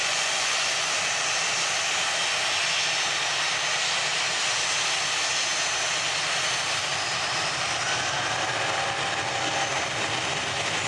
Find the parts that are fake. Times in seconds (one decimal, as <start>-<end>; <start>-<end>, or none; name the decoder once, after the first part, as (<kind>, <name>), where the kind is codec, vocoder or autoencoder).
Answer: 0.0-0.9 (vocoder, Vocos)